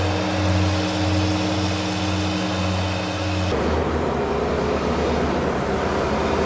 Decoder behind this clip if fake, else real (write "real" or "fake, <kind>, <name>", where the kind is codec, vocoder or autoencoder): real